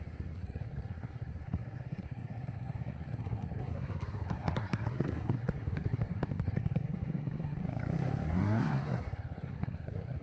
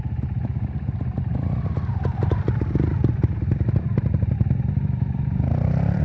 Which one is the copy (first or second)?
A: first